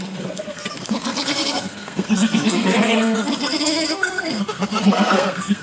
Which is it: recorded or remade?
remade